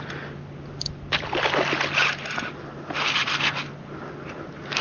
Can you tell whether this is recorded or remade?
recorded